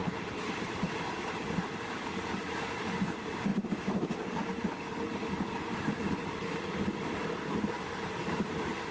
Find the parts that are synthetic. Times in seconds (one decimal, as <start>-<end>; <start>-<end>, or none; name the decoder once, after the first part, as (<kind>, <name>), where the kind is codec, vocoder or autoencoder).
0.0-3.5 (vocoder, BigVGAN v2); 5.5-8.9